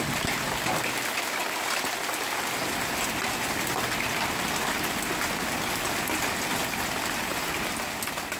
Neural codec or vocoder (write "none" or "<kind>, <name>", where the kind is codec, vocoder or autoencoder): none